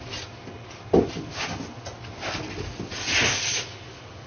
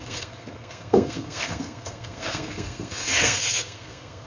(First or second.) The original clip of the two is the first